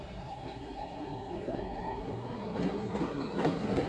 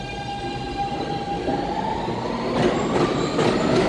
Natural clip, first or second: second